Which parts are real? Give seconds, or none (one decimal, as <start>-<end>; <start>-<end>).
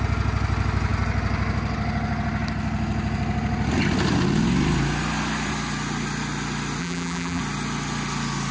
0.0-6.8; 7.4-8.5